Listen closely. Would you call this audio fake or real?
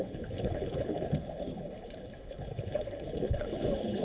fake